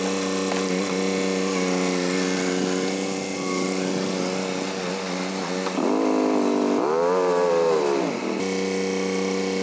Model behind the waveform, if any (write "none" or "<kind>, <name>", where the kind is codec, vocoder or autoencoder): none